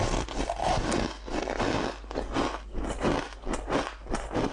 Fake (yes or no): no